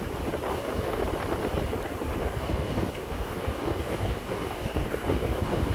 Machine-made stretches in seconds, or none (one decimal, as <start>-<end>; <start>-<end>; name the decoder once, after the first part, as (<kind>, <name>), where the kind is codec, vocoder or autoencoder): 0.5-1.0 (codec, DAC); 2.2-5.7